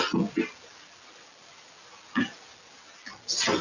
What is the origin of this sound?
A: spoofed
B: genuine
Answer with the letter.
B